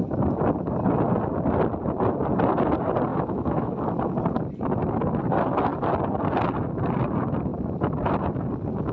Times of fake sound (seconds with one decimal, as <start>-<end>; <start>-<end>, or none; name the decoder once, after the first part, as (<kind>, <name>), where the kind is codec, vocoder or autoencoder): 3.1-3.8 (autoencoder, DAC-VAE)